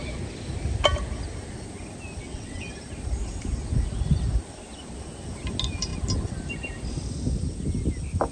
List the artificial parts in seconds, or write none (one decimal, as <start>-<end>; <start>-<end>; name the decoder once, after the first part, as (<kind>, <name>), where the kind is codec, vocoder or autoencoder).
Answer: 2.2-2.7 (vocoder, WaveNeXt)